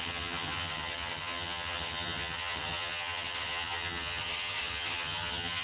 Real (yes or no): no